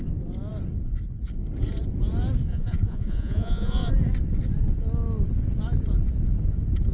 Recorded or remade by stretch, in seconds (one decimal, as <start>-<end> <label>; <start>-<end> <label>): 0.0-2.5 recorded; 2.5-3.9 remade; 3.9-6.9 recorded